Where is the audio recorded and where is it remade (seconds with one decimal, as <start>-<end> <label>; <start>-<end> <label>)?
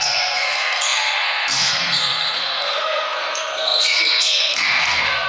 0.0-5.3 remade